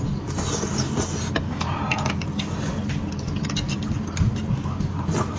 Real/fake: real